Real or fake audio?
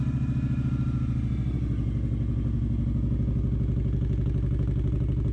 real